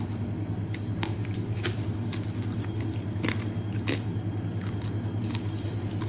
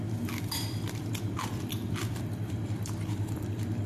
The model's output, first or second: second